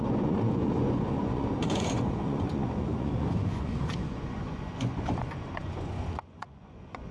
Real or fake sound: fake